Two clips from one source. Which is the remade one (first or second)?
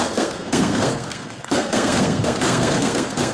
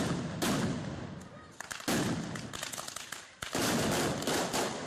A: first